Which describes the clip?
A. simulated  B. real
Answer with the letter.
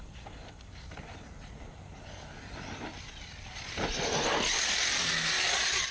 B